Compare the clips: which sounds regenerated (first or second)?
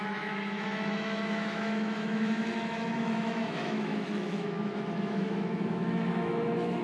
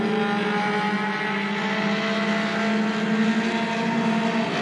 first